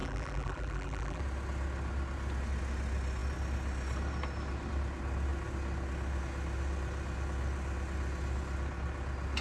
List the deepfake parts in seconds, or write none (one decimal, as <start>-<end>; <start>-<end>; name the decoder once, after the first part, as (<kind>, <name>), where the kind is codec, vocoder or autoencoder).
0.0-1.2 (vocoder, BigVGAN v2)